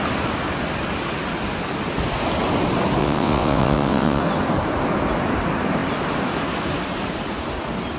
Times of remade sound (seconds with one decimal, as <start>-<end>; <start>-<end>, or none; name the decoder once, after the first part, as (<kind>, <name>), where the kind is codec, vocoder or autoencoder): 3.0-4.2 (vocoder, WaveNeXt)